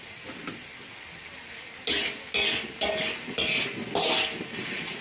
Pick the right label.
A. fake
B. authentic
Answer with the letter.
B